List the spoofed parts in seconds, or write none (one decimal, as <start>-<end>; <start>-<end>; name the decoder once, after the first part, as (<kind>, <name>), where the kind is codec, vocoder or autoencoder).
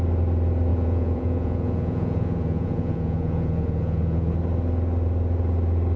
0.7-4.3 (vocoder, Vocos)